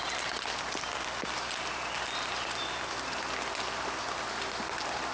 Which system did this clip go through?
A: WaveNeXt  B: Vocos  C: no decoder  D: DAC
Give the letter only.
C